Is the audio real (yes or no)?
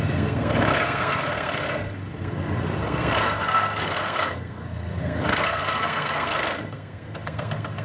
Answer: no